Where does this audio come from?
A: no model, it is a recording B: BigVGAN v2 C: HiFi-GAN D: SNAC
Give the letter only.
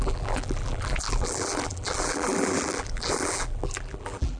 B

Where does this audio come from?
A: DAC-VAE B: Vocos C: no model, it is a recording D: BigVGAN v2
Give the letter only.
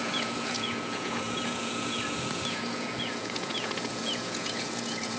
B